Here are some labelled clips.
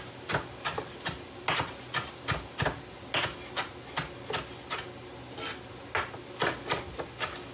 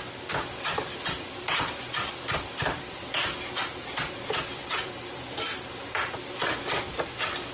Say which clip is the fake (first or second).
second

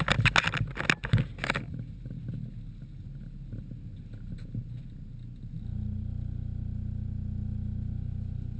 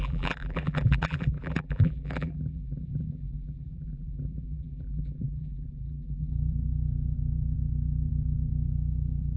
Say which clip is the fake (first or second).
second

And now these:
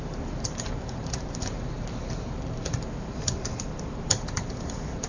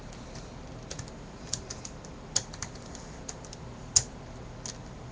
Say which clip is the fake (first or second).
first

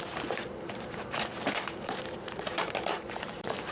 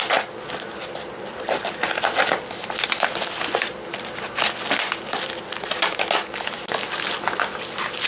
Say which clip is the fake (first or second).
first